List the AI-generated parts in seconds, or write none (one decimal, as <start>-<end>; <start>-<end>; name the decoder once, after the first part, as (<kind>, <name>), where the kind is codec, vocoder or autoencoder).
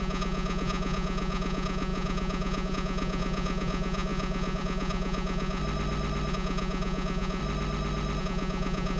0.0-5.6 (vocoder, Vocos); 6.3-7.4; 8.2-9.0